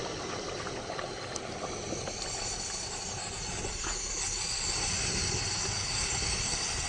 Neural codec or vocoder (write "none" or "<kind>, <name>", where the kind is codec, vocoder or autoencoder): none